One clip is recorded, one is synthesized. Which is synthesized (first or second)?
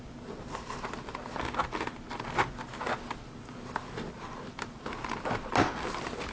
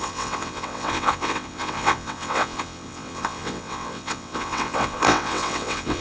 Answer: second